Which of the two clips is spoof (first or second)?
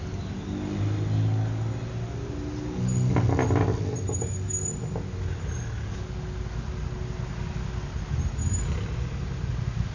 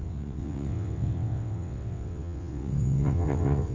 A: second